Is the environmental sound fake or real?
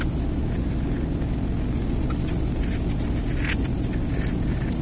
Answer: real